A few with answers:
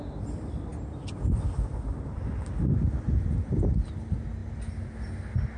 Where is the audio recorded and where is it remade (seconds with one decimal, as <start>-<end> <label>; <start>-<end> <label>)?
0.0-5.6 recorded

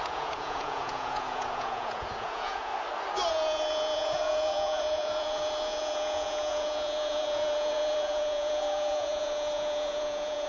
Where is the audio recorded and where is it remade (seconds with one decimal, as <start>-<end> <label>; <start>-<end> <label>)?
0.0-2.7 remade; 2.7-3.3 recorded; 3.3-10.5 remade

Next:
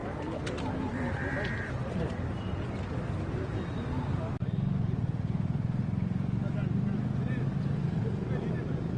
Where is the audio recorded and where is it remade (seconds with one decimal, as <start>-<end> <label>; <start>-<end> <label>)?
0.0-9.0 recorded

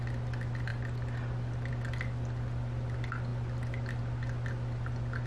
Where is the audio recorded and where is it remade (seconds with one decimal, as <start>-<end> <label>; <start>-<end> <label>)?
0.0-5.3 recorded

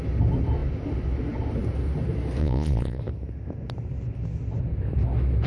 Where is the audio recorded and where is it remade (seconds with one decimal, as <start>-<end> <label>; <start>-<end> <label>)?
0.0-2.4 recorded; 2.4-3.0 remade; 3.0-5.5 recorded

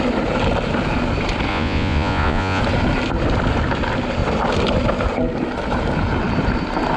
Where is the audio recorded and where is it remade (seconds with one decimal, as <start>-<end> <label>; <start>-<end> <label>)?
0.0-1.5 recorded; 1.5-2.6 remade; 2.6-7.0 recorded

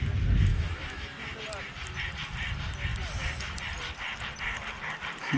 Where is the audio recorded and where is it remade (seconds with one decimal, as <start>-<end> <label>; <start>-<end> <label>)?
0.0-0.5 recorded; 0.5-1.4 remade; 1.4-5.4 recorded

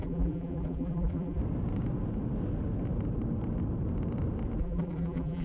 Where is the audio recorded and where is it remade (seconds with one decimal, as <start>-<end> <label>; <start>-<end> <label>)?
0.0-1.4 remade; 1.4-4.6 recorded; 4.6-5.4 remade